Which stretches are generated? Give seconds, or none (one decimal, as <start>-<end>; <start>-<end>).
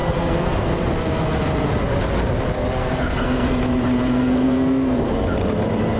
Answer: 0.0-0.7; 2.8-3.6; 4.1-5.0